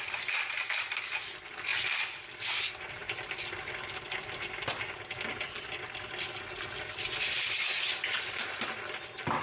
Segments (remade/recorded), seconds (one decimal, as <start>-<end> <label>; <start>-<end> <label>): 0.0-1.7 recorded; 1.7-2.5 remade; 2.5-3.0 recorded; 3.0-5.4 remade; 5.4-9.4 recorded